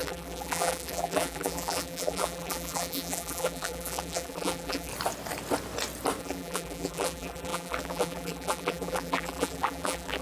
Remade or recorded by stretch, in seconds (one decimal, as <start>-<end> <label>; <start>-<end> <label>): 0.0-4.9 remade; 4.9-6.2 recorded; 6.2-10.2 remade